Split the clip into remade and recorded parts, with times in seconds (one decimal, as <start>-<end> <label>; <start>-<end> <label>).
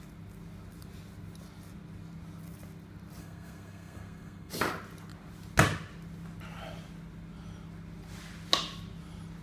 0.0-3.2 recorded; 3.2-4.5 remade; 4.5-9.4 recorded